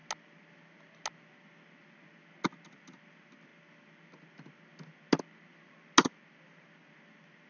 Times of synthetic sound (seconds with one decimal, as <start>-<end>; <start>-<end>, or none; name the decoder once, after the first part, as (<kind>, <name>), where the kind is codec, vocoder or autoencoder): none